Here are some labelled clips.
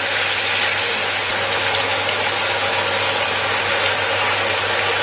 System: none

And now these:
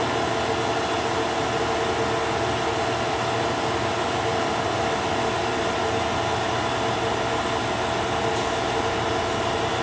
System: none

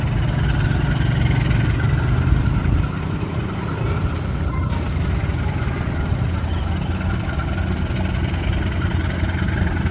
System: none